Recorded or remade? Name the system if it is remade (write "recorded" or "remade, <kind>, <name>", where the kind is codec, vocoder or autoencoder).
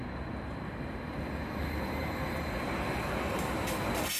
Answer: recorded